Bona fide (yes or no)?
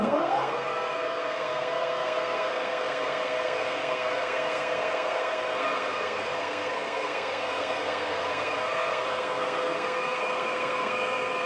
no